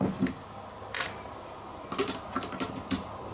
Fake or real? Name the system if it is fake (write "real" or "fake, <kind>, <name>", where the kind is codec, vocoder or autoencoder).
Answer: real